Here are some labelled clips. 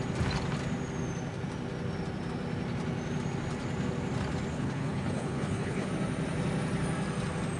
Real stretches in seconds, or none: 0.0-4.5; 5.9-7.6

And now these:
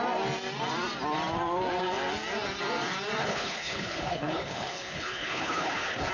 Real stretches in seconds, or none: 0.0-3.2

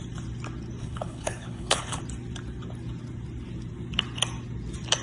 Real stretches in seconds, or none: 0.0-0.8; 2.0-5.0

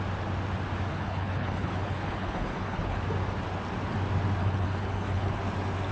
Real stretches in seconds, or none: 0.0-0.9; 3.0-4.4; 5.4-5.9